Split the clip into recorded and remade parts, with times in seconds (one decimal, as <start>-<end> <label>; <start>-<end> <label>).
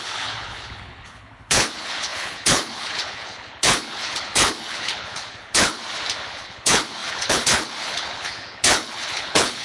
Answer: 0.0-5.8 remade; 5.8-6.3 recorded; 6.3-9.6 remade